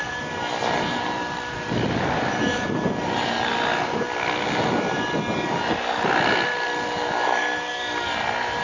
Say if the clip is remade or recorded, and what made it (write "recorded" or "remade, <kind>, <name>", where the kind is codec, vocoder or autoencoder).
recorded